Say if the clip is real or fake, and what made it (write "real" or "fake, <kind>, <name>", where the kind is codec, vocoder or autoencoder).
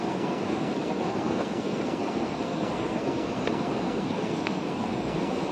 fake, codec, SNAC